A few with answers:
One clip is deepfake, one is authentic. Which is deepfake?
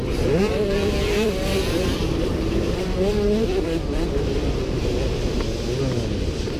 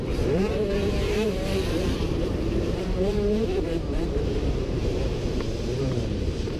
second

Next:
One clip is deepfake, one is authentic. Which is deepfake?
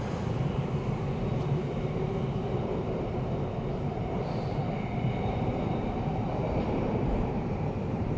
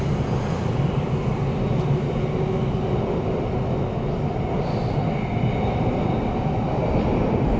first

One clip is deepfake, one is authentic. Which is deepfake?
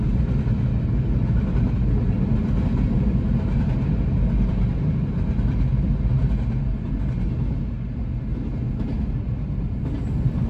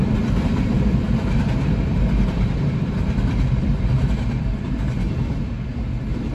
second